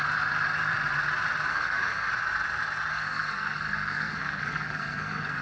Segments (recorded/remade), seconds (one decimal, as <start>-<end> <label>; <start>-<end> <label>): 0.0-1.5 recorded; 1.5-2.1 remade; 2.1-2.9 recorded; 2.9-5.4 remade